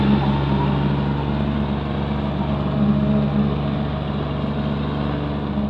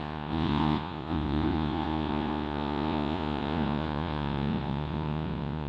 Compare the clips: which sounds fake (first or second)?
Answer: second